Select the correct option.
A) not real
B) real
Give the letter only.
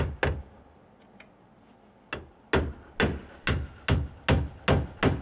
B